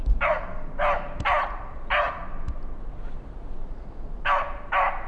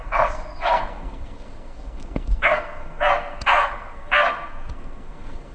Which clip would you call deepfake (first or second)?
second